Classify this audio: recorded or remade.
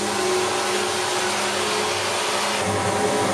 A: recorded